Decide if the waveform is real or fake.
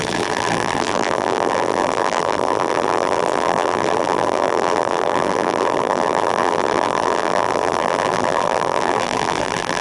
fake